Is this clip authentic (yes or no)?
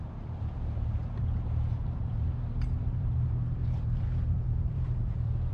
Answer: no